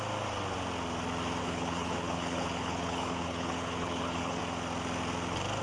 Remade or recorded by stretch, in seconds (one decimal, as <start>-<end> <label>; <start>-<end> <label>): 0.0-1.4 recorded; 1.4-4.4 remade; 4.4-5.6 recorded